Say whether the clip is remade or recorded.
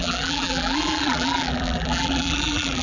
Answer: remade